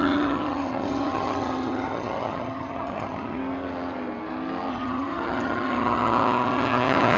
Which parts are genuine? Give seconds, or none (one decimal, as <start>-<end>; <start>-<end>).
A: 3.4-4.7